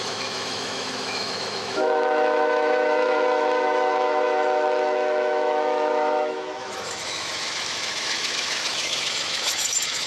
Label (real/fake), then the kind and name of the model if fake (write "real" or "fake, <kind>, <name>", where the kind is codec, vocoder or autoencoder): fake, autoencoder, DAC-VAE